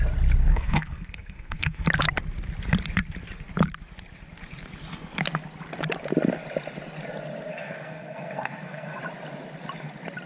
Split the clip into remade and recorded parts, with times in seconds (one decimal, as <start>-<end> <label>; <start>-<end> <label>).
0.0-0.4 recorded; 0.4-1.9 remade; 1.9-7.5 recorded; 7.5-9.0 remade; 9.0-10.3 recorded